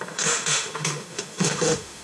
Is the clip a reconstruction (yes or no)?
yes